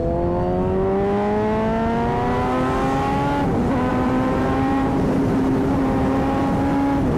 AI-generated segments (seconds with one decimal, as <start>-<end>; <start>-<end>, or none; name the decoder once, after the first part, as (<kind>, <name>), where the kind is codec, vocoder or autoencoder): 3.9-6.4 (vocoder, BigVGAN v2)